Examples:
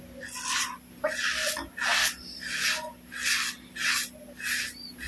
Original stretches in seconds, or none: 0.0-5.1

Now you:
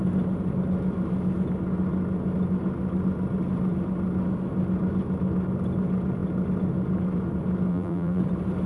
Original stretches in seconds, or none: 0.0-7.7; 8.2-8.7

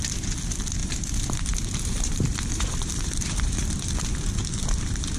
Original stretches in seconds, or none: 0.0-0.8; 3.9-4.4

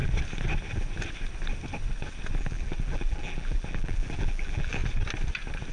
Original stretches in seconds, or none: 0.0-2.3; 4.8-5.7

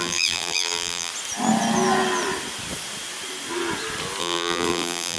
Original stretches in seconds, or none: 1.1-4.2

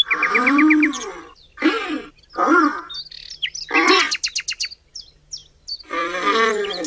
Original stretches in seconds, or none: 0.0-6.9

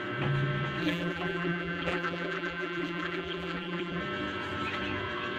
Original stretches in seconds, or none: 0.0-0.8; 4.0-5.4

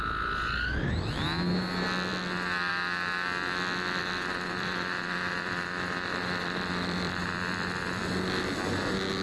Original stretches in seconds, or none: 0.0-4.0; 8.0-9.2